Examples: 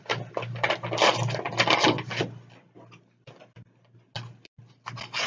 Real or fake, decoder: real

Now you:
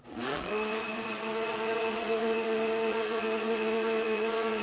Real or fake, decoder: fake, vocoder, Vocos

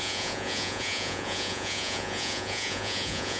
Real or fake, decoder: fake, vocoder, Vocos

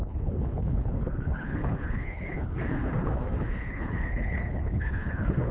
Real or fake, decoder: fake, codec, HILCodec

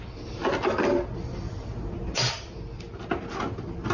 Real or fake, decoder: real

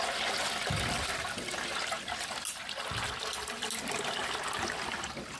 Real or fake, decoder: real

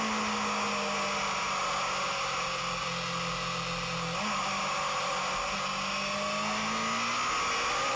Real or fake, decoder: real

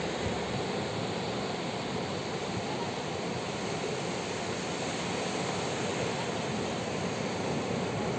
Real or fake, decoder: real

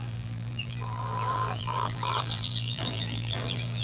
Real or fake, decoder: fake, vocoder, BigVGAN v2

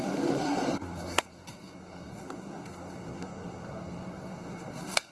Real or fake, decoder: fake, codec, SNAC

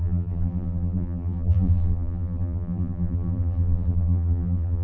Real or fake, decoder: fake, vocoder, BigVGAN v2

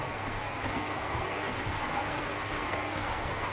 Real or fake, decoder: fake, codec, SNAC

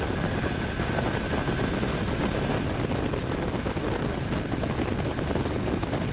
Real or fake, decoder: real